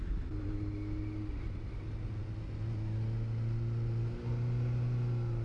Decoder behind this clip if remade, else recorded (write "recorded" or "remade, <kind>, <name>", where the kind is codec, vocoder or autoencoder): recorded